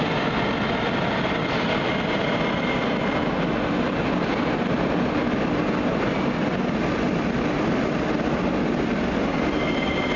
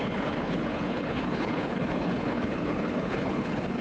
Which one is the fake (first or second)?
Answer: second